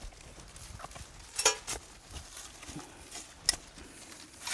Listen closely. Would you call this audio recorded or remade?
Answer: recorded